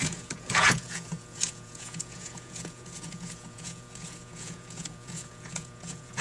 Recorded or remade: remade